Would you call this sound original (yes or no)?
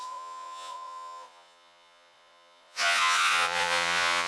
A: no